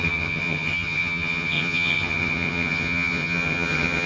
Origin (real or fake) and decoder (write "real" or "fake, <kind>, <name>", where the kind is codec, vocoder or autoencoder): fake, vocoder, HiFi-GAN